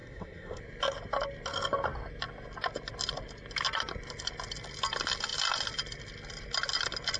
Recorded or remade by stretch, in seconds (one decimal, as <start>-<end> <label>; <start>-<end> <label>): 0.0-0.6 remade; 0.6-7.2 recorded